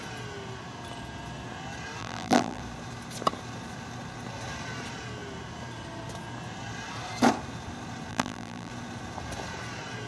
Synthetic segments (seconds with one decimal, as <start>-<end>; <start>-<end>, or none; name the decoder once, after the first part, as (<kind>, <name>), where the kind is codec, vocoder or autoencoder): 2.0-2.6 (vocoder, BigVGAN v2); 8.1-8.7

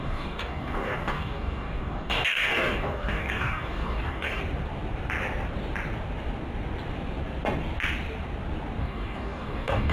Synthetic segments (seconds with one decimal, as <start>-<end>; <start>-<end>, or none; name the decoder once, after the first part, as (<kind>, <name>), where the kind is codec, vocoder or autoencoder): 0.0-4.4 (codec, DAC); 8.8-9.9